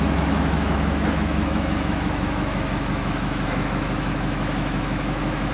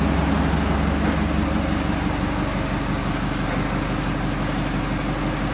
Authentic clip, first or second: second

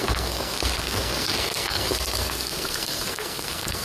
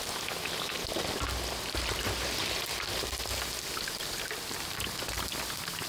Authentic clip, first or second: second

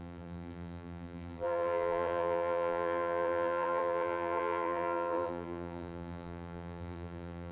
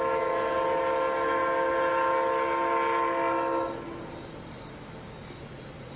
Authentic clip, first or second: second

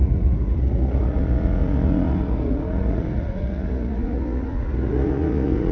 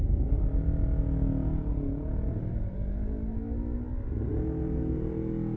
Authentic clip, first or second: second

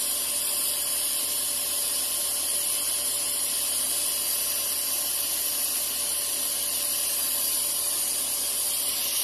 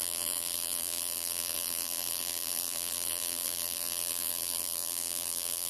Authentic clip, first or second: first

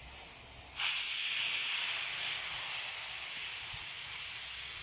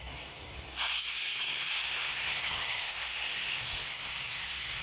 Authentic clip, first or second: first